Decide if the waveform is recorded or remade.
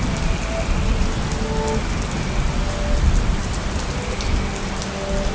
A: recorded